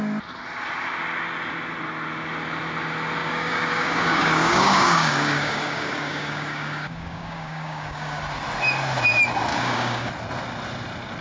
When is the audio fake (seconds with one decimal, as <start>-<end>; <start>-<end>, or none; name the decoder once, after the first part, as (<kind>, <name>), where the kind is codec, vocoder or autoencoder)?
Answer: 3.2-8.2 (codec, DAC); 9.5-10.1